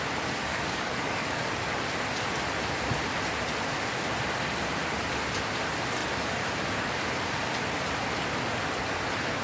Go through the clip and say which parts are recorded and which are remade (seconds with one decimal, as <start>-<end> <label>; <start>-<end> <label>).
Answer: 0.0-0.4 recorded; 0.4-1.5 remade; 1.5-9.4 recorded